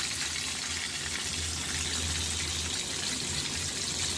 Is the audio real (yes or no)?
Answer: yes